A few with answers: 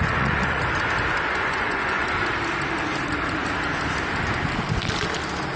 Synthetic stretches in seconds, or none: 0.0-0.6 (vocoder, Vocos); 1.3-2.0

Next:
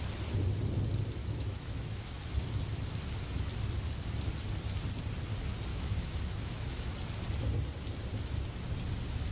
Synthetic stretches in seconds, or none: 1.2-2.1 (autoencoder, DAC-VAE); 5.7-6.9

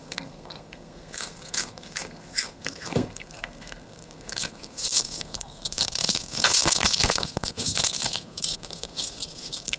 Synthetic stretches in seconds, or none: 0.0-9.8 (codec, SNAC)

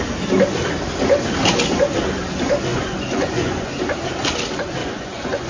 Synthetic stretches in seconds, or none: 2.7-3.7 (vocoder, Vocos); 4.8-5.5

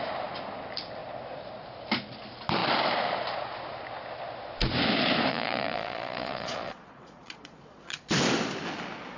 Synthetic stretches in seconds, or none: 5.3-8.1 (vocoder, Vocos)

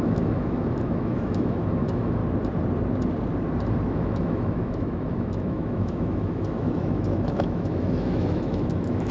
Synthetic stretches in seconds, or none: 0.0-2.2 (autoencoder, DAC-VAE); 3.9-9.1